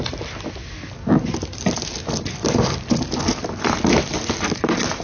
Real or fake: real